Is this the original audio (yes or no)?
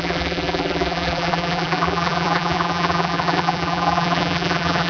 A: no